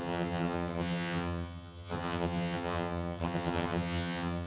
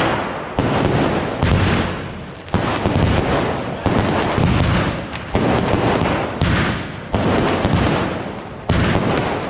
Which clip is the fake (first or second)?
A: first